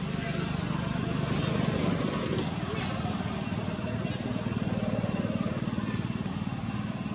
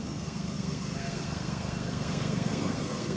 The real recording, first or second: first